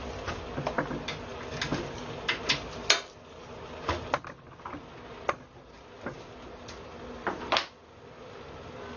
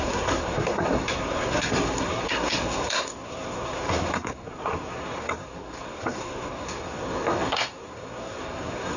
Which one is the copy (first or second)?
second